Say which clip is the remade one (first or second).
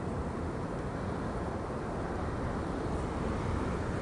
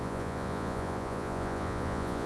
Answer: second